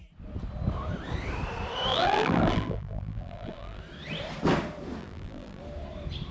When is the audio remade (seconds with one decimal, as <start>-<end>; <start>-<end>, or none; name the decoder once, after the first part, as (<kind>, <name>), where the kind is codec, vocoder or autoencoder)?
1.9-3.8 (vocoder, BigVGAN v2); 5.0-5.6